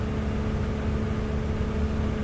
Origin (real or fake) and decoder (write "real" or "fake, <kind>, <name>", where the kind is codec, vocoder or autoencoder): real